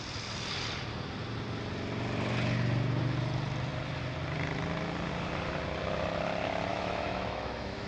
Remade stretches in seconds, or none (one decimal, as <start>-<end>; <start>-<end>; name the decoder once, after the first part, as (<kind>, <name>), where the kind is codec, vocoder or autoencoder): 6.7-7.9 (autoencoder, DAC-VAE)